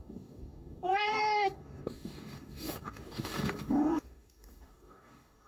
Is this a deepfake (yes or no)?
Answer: yes